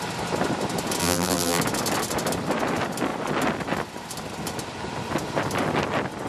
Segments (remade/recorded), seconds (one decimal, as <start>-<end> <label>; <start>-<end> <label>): 0.0-1.0 recorded; 1.0-1.6 remade; 1.6-6.3 recorded